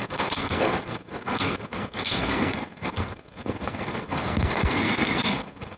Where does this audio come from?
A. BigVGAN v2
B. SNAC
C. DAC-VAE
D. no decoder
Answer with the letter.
B